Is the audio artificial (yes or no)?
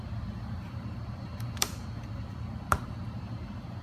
yes